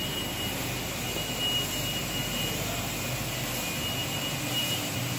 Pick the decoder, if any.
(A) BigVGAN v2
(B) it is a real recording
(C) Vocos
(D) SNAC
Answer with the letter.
B